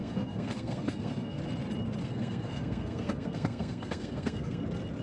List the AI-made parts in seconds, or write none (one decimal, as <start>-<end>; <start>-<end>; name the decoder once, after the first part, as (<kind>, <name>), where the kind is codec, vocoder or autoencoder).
0.0-1.4 (codec, SNAC); 2.0-4.6